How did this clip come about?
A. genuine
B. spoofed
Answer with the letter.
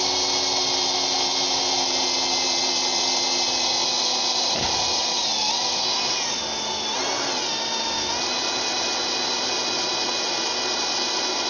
A